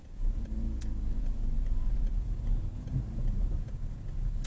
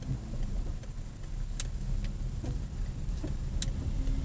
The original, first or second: second